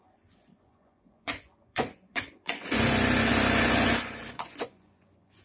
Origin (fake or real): fake